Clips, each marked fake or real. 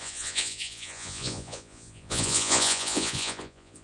fake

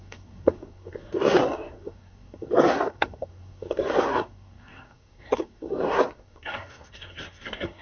fake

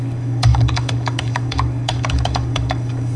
fake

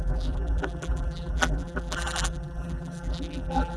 fake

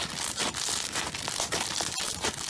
real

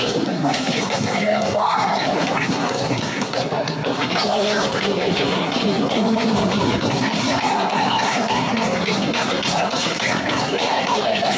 fake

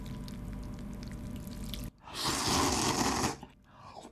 real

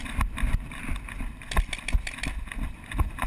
real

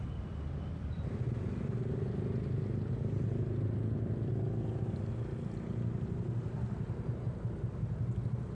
real